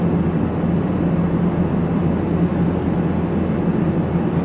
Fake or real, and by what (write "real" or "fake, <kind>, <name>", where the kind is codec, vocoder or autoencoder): real